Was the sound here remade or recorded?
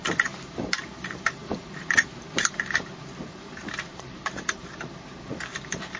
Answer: remade